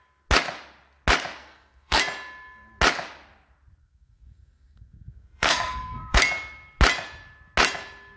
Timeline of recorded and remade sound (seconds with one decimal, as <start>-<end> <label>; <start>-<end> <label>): 0.0-1.4 recorded; 1.4-2.0 remade; 2.0-3.8 recorded; 3.8-6.2 remade; 6.2-8.2 recorded